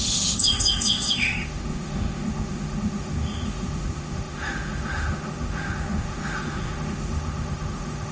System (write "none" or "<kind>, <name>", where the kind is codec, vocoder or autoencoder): autoencoder, DAC-VAE